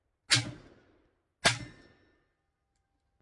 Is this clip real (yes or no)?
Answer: yes